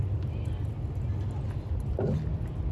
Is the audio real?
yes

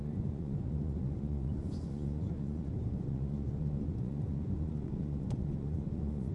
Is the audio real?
no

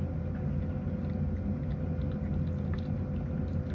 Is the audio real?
yes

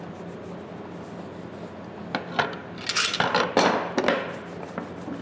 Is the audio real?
yes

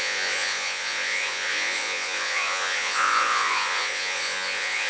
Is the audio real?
no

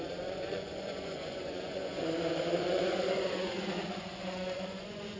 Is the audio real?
no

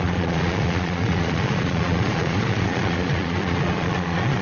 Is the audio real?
no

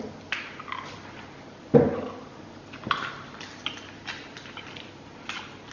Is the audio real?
yes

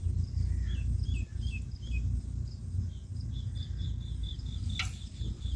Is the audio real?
yes